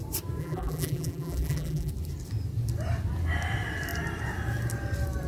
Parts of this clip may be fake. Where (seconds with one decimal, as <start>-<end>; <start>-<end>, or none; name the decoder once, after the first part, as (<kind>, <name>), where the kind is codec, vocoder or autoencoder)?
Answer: 0.4-1.9 (vocoder, BigVGAN v2)